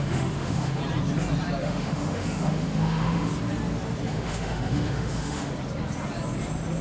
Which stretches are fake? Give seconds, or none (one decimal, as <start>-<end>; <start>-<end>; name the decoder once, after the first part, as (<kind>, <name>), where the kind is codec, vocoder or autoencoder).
0.0-0.8 (autoencoder, DAC-VAE); 1.6-3.3; 4.1-5.5